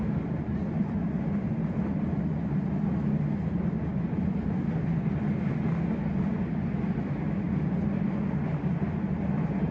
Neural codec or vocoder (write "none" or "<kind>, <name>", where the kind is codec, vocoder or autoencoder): none